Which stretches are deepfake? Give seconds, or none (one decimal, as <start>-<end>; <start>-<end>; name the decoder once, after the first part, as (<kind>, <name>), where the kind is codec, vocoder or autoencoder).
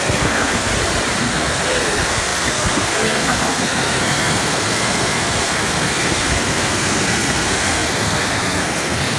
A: 0.0-0.7 (codec, SNAC); 1.2-9.2